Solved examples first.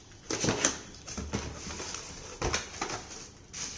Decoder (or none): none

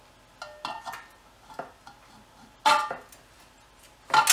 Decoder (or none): none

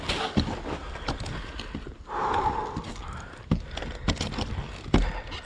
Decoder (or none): none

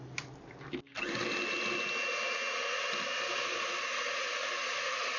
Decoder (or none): none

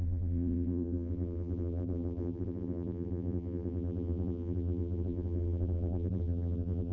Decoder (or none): vocoder, BigVGAN v2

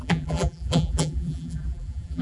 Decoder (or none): vocoder, BigVGAN v2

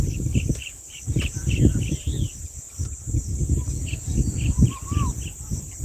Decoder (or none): vocoder, BigVGAN v2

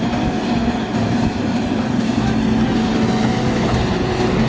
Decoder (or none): none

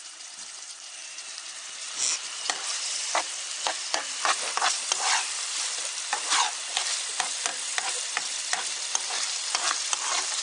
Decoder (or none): vocoder, BigVGAN v2